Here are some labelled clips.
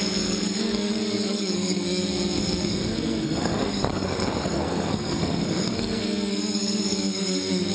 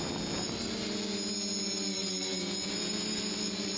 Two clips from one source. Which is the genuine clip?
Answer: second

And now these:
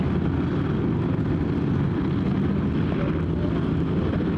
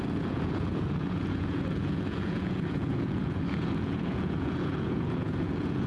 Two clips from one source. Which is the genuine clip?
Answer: first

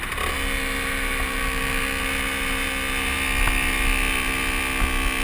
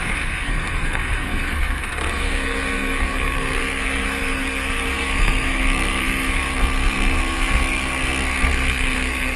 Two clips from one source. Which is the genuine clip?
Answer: first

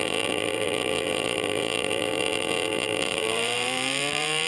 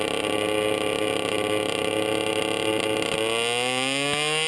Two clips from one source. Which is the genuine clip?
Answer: second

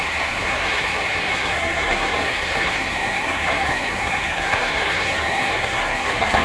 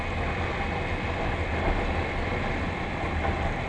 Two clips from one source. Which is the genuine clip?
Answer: second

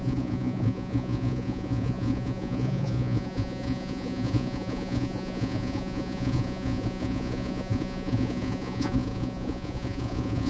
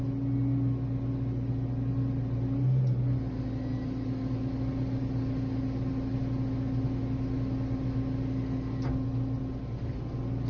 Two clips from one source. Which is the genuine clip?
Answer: second